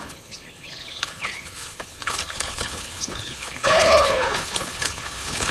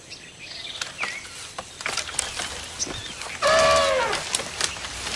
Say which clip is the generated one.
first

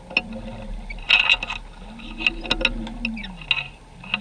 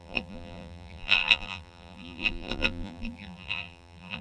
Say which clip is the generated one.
second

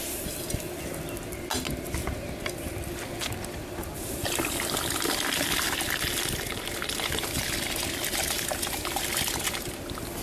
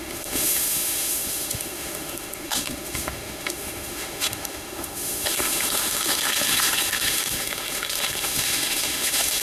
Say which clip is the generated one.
second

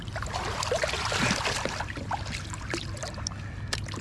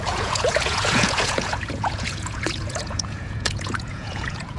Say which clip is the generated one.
second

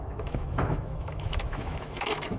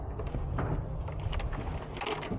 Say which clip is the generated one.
first